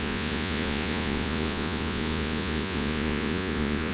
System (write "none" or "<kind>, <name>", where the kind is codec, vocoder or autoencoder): vocoder, Vocos